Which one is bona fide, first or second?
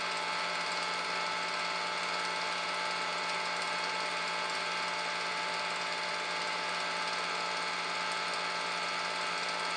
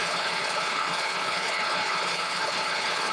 first